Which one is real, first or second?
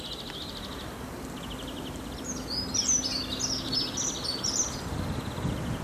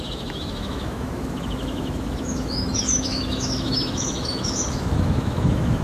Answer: first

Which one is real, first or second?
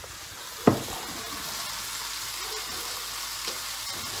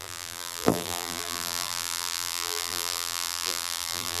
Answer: first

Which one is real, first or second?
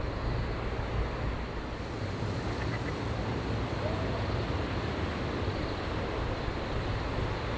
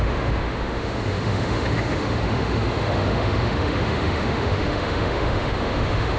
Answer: first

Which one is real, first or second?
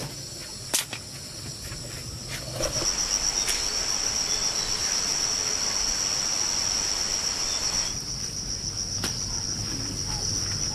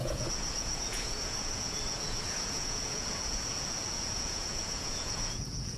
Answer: first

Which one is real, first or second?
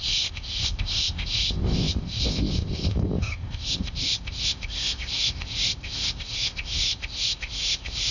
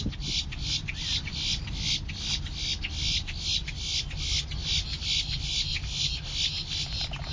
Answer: second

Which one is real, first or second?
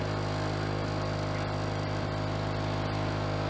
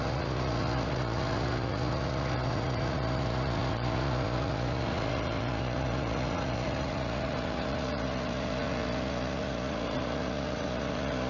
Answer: first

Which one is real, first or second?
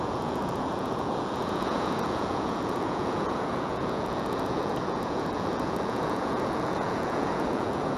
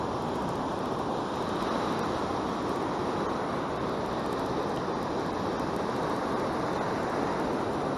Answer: second